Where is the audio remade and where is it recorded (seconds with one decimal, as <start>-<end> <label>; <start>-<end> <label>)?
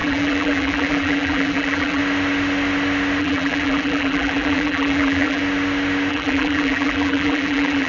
0.0-2.0 remade; 2.0-3.2 recorded; 3.2-5.4 remade; 5.4-6.1 recorded; 6.1-7.9 remade